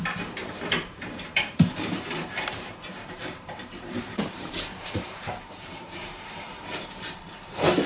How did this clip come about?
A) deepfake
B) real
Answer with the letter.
A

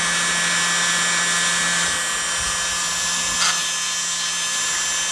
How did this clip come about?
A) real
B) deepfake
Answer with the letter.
A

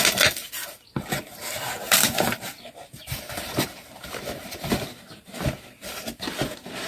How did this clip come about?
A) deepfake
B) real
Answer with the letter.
A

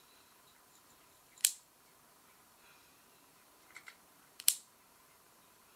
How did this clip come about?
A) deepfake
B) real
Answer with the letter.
A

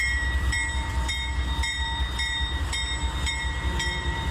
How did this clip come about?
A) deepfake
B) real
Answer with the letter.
A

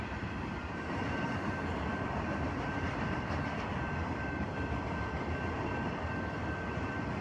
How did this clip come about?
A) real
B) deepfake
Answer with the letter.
B